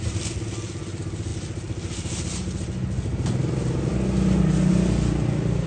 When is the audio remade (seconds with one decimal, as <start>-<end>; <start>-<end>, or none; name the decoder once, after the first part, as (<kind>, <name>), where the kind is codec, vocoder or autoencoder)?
none